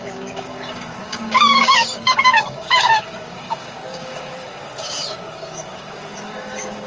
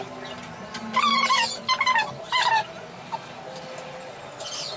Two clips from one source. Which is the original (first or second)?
second